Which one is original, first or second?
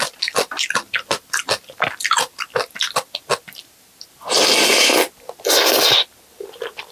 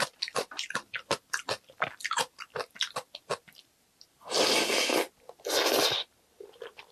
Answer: first